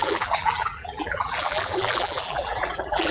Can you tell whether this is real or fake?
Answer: fake